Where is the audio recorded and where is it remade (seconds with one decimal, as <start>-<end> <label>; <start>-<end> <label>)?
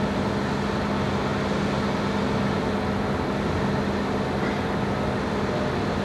0.0-6.0 recorded